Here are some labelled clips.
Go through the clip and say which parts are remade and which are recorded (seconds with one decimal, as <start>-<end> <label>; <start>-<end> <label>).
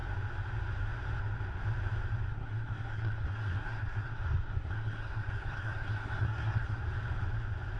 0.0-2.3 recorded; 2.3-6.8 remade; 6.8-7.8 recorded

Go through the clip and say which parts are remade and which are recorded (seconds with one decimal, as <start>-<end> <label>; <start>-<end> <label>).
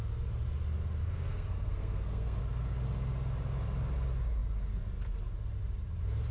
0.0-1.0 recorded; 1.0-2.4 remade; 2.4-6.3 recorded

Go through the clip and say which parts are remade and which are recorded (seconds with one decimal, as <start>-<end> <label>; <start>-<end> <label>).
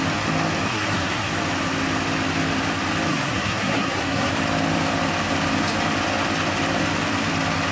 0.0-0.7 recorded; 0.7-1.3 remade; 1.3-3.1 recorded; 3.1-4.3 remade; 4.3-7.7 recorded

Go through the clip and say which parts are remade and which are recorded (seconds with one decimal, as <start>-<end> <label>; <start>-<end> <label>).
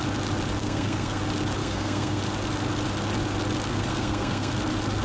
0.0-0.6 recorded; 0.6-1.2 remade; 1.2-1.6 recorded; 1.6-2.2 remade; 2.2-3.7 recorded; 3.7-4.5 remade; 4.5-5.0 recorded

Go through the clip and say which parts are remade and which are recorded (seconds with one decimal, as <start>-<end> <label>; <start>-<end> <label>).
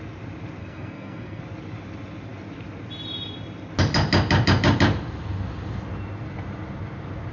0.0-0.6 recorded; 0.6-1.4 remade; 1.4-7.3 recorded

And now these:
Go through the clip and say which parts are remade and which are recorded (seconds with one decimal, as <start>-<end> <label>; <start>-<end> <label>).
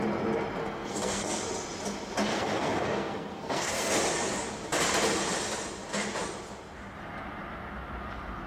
0.0-0.6 recorded; 0.6-1.4 remade; 1.4-2.3 recorded; 2.3-3.9 remade; 3.9-8.5 recorded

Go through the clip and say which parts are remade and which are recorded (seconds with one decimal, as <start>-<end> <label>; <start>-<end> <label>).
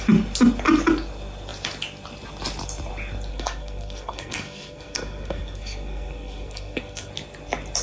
0.0-3.3 recorded; 3.3-7.1 remade; 7.1-7.8 recorded